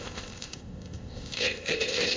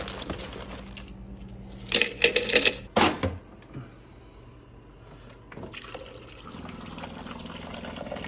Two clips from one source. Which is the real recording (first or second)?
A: second